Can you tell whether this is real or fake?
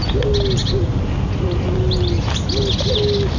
real